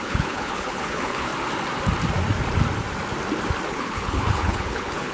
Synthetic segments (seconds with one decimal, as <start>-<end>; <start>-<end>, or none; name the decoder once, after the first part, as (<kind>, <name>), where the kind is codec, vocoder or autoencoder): 0.0-1.3 (codec, HILCodec); 3.7-5.1